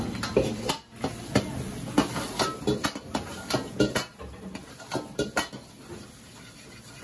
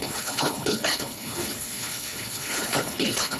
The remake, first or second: second